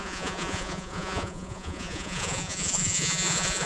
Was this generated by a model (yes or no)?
yes